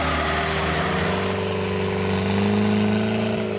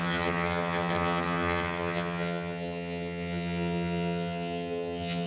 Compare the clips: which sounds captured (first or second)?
first